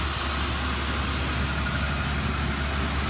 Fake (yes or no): no